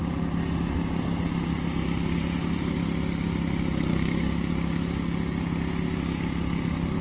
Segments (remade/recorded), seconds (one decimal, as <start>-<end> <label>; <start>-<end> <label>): 0.0-3.9 recorded; 3.9-4.5 remade; 4.5-7.0 recorded